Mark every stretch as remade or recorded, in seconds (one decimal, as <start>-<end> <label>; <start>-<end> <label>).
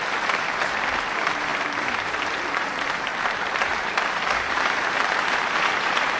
0.0-6.2 remade